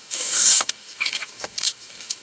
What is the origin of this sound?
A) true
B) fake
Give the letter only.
B